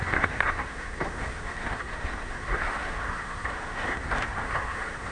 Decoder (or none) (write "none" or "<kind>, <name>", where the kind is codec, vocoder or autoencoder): codec, SNAC